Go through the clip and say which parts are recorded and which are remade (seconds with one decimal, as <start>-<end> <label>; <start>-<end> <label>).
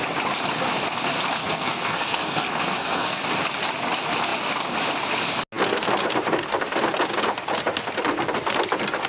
0.0-1.4 recorded; 1.4-3.2 remade; 3.2-9.1 recorded